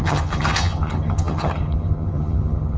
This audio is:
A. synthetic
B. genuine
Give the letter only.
A